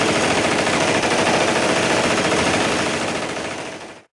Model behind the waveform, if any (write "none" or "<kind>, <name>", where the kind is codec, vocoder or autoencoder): none